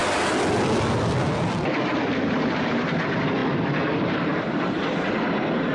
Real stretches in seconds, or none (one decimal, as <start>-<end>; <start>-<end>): 0.0-3.4; 4.9-5.7